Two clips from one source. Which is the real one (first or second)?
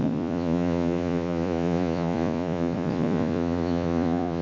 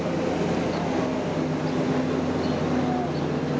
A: second